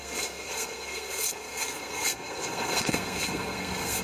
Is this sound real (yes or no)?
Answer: no